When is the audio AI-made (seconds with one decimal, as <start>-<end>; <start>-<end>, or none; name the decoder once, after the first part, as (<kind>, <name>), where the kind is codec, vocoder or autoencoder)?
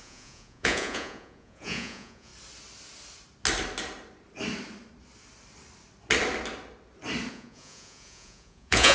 0.0-2.3 (vocoder, Vocos); 7.3-8.9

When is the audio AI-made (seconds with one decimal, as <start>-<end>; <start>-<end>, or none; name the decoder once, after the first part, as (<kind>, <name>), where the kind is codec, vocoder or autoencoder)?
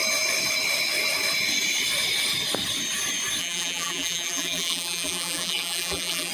3.4-6.3 (vocoder, BigVGAN v2)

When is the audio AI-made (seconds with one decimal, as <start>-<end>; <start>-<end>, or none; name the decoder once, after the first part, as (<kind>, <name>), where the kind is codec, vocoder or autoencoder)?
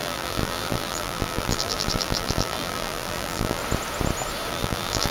0.0-3.6 (vocoder, BigVGAN v2); 4.5-5.1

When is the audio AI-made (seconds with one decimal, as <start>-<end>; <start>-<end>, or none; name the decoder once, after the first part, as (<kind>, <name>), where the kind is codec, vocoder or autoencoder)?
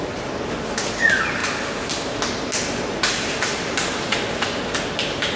none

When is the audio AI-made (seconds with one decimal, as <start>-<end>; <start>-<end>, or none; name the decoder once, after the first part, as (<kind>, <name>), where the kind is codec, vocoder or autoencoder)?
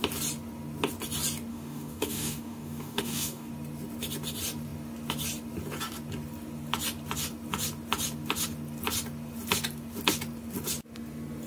1.5-3.5 (codec, DAC)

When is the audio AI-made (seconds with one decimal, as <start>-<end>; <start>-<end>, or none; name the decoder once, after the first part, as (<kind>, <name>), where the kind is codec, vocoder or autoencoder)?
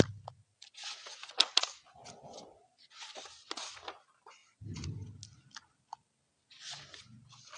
none